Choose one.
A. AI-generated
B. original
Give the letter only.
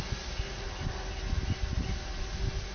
B